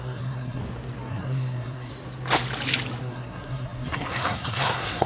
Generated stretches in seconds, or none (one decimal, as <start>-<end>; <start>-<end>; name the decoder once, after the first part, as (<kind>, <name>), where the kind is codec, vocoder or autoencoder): 0.0-0.6 (codec, SNAC); 1.1-1.9; 3.0-5.1